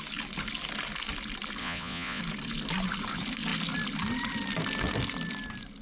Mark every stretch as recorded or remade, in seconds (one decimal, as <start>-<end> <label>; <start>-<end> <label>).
0.0-1.6 recorded; 1.6-2.2 remade; 2.2-5.8 recorded